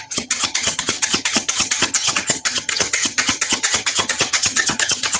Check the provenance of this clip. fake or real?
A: fake